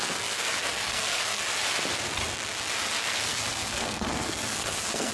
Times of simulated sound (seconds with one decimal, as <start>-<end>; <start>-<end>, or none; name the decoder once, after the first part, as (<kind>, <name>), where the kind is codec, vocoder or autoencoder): 0.0-1.4 (codec, SNAC); 3.0-5.1